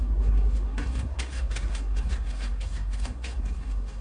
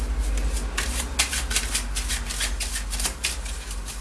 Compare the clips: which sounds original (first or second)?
second